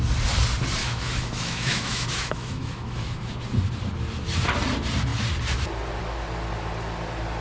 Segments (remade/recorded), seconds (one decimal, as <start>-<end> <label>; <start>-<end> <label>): 0.0-0.8 recorded; 0.8-3.3 remade; 3.3-7.4 recorded